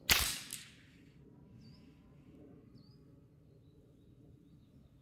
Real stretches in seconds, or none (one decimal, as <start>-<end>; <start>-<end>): 0.0-5.0